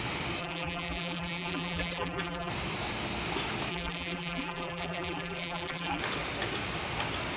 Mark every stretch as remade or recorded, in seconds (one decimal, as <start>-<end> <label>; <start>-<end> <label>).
0.0-0.4 recorded; 0.4-2.5 remade; 2.5-3.7 recorded; 3.7-6.0 remade; 6.0-7.4 recorded